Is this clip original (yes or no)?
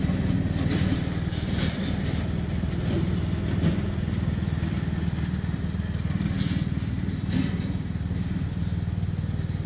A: yes